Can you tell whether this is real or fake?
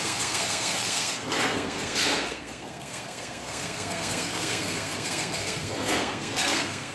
fake